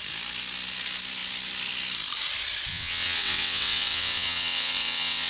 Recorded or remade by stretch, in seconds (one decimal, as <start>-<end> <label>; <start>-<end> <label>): 0.0-2.7 recorded; 2.7-5.3 remade